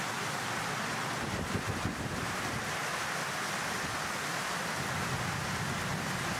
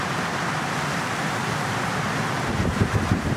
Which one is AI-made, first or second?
second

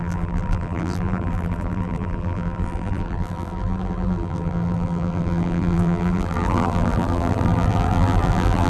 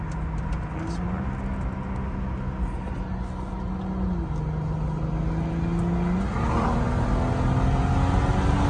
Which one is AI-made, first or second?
first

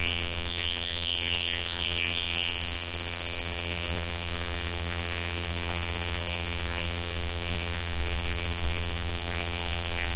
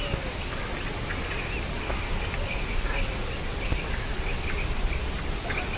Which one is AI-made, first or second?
first